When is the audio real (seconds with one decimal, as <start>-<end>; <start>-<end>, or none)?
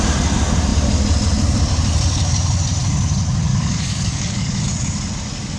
0.0-3.5; 4.6-5.6